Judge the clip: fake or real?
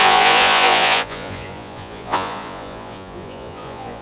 fake